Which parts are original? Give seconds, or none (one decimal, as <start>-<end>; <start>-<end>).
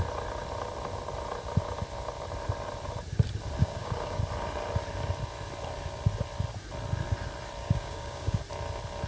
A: 0.0-3.6; 4.2-7.6; 8.4-9.1